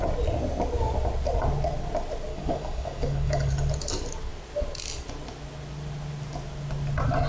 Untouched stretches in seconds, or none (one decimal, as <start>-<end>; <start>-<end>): 0.0-2.3; 3.5-7.3